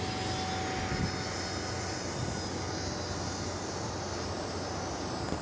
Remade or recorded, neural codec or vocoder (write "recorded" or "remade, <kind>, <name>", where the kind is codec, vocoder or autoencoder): recorded